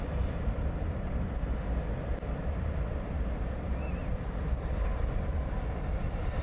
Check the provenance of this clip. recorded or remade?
recorded